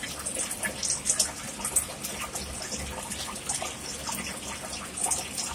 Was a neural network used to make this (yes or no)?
no